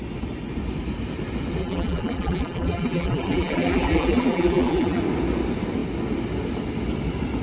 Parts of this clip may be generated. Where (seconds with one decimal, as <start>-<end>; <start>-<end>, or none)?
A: 1.6-5.0